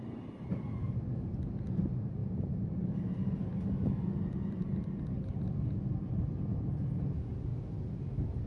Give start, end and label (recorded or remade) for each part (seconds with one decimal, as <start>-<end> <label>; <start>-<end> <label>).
0.0-7.5 recorded; 7.5-8.5 remade